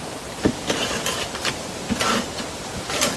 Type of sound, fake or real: real